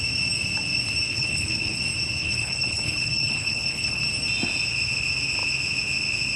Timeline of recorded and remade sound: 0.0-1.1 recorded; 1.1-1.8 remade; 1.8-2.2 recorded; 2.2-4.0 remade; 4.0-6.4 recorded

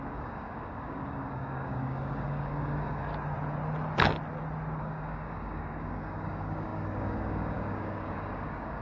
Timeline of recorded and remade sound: 0.0-3.1 remade; 3.1-4.8 recorded; 4.8-8.8 remade

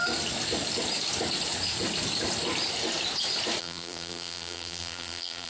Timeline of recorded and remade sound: 0.0-3.6 recorded; 3.6-5.5 remade

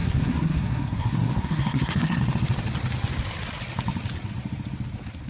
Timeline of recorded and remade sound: 0.0-2.2 remade; 2.2-5.3 recorded

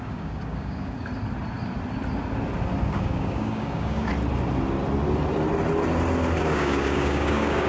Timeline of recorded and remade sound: 0.0-1.1 remade; 1.1-2.8 recorded; 2.8-4.1 remade; 4.1-6.4 recorded; 6.4-7.7 remade

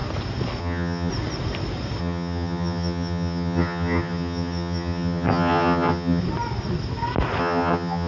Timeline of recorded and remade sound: 0.0-0.6 recorded; 0.6-1.1 remade; 1.1-2.0 recorded; 2.0-6.2 remade; 6.2-7.4 recorded; 7.4-8.1 remade

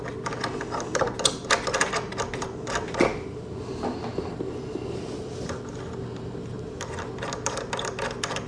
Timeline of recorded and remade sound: 0.0-8.5 recorded